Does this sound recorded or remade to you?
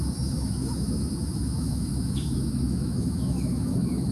remade